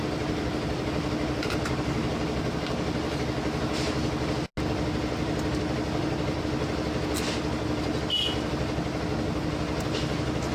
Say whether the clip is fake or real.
real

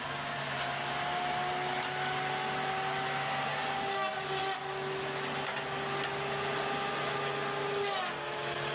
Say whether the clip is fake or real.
real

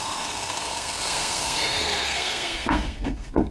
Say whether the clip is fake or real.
fake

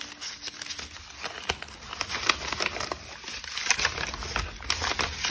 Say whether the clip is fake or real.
real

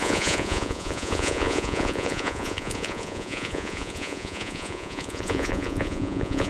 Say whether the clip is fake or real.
fake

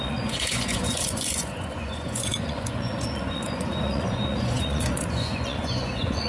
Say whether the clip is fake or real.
fake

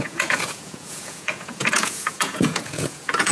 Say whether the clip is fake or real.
fake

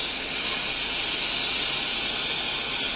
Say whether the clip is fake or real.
real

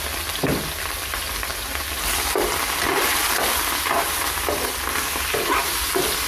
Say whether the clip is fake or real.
real